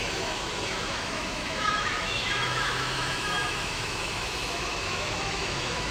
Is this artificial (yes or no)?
yes